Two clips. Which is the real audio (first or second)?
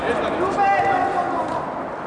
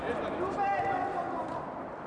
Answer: first